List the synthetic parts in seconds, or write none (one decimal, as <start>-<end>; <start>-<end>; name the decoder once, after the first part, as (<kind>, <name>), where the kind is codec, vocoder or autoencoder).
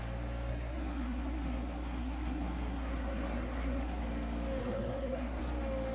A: 0.5-4.0 (codec, SNAC); 4.6-5.4